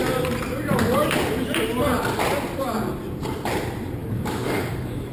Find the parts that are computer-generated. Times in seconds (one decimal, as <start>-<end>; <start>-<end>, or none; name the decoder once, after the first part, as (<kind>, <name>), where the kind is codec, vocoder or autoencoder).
4.0-5.1 (codec, DAC)